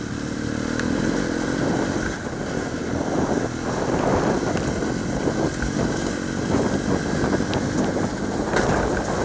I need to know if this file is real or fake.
real